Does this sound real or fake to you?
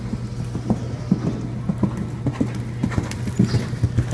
real